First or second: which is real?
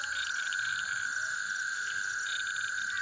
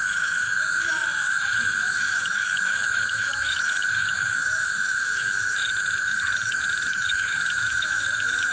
first